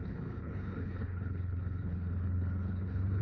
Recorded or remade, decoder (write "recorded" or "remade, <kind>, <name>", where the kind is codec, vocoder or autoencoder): remade, codec, HILCodec